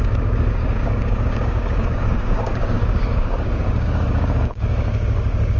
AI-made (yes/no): yes